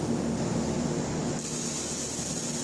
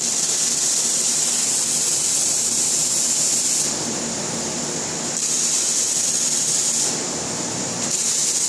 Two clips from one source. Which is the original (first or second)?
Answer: first